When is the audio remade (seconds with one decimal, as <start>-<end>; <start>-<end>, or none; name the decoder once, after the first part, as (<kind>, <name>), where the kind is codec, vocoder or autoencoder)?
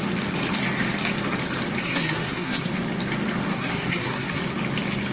1.8-2.7 (codec, SNAC); 3.5-4.4